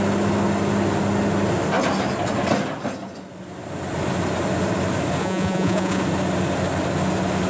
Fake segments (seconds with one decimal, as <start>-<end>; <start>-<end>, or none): 5.2-6.0